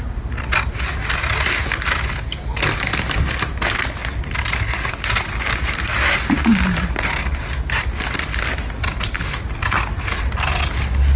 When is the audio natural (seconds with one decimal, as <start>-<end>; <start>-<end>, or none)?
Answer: 0.0-11.2

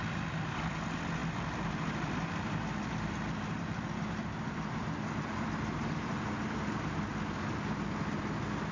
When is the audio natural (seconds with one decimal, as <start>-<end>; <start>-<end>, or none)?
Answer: 0.0-8.7

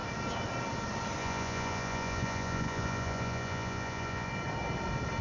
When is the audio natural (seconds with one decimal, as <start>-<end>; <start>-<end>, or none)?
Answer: 0.0-1.2; 4.3-5.2